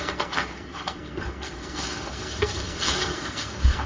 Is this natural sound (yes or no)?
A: no